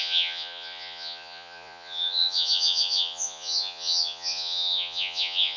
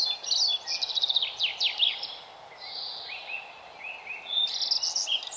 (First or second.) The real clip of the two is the second